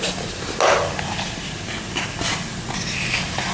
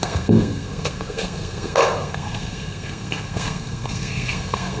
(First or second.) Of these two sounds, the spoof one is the second